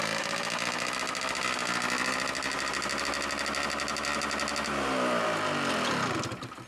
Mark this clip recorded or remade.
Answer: recorded